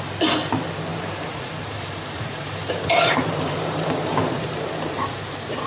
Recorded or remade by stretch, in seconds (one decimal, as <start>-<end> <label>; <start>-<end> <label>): 0.0-0.9 recorded; 0.9-4.3 remade; 4.3-5.7 recorded